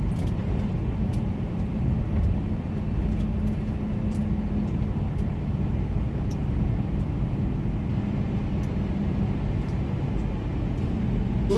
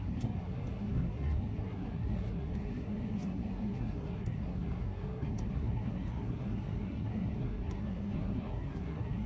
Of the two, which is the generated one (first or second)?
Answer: second